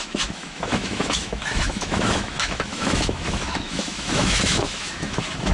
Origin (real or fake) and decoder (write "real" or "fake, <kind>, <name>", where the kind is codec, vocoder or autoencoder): fake, autoencoder, DAC-VAE